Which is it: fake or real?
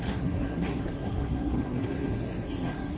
fake